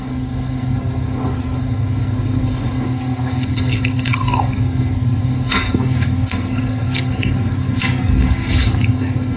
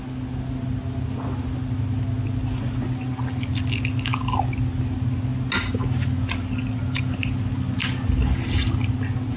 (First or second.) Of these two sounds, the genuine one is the second